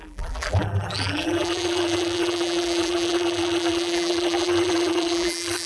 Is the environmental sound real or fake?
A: fake